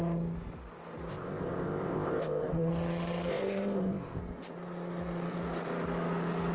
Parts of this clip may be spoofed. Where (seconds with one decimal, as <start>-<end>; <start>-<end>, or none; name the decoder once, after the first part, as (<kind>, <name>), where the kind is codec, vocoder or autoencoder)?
1.1-2.7 (codec, ZipCodec); 3.3-4.2

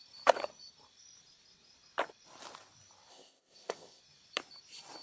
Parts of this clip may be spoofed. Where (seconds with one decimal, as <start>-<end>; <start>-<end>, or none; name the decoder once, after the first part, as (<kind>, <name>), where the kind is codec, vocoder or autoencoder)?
3.1-4.0 (codec, ZipCodec)

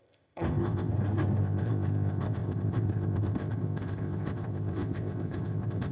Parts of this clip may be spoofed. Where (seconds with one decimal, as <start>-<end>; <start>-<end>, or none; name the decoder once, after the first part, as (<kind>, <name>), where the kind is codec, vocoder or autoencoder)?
0.0-0.9 (codec, ZipCodec); 1.4-5.9

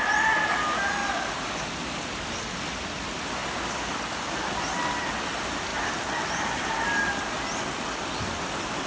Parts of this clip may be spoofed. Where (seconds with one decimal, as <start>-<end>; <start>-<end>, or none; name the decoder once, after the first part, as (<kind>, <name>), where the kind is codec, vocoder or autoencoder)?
none

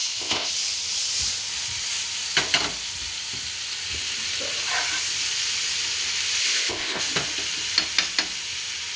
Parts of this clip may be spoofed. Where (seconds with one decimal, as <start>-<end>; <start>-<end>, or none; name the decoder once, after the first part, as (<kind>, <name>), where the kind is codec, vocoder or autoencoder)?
0.0-0.5 (codec, ZipCodec); 6.4-7.0

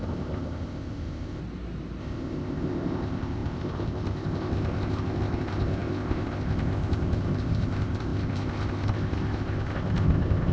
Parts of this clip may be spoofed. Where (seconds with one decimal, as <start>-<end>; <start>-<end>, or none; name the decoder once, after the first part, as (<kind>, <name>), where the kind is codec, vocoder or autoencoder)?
0.0-1.4 (codec, ZipCodec); 2.0-10.5

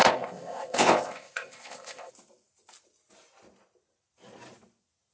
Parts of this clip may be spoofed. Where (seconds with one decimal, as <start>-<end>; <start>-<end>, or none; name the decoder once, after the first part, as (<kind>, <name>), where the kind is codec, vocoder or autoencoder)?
0.0-2.1 (codec, ZipCodec)

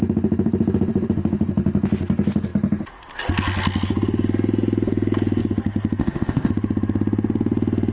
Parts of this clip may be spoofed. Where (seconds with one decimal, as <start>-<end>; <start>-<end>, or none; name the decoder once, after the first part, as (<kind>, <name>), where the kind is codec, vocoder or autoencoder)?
6.0-6.5 (codec, ZipCodec)